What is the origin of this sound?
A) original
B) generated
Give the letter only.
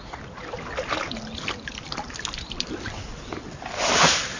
A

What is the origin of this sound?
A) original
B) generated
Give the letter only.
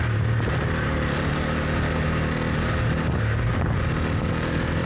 A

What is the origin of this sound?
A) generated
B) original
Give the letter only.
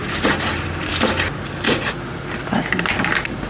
B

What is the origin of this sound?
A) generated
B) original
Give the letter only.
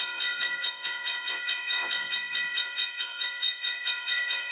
A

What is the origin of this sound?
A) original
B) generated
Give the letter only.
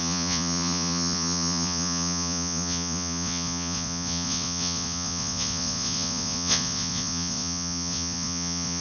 B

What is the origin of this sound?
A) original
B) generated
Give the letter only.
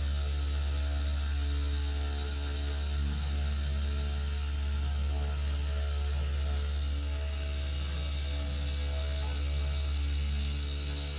A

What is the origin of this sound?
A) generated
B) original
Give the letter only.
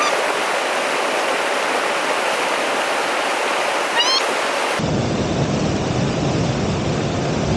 B